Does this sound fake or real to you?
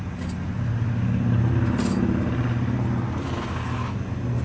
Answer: real